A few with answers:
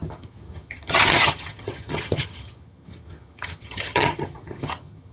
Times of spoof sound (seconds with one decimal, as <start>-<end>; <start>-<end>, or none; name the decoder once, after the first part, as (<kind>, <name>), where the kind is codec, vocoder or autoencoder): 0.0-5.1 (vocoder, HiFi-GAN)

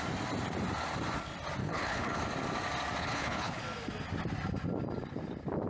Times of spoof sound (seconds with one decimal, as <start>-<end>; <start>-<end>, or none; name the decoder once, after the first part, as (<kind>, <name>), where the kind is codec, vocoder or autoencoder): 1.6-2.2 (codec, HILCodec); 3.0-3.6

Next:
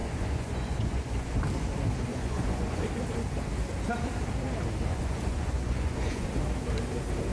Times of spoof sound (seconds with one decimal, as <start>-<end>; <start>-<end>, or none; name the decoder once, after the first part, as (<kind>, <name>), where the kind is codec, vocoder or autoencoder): 0.0-1.4 (vocoder, Vocos); 2.1-2.8; 4.9-6.4

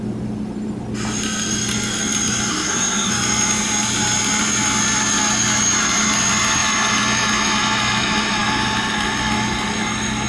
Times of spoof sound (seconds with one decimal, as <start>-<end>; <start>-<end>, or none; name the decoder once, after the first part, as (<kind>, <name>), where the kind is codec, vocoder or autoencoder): 2.5-3.1 (codec, SNAC)